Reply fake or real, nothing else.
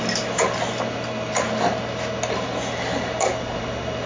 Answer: real